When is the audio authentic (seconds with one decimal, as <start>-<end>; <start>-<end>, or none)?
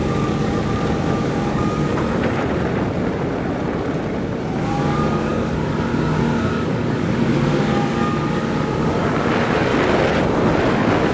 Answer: 1.9-4.6; 9.7-10.7